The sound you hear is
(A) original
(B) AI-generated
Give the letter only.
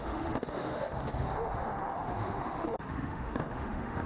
B